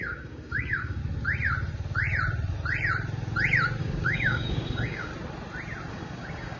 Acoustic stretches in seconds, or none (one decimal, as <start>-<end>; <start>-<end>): 1.0-3.8; 5.1-5.9